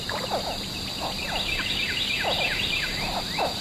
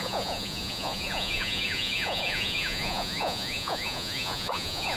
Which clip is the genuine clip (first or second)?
first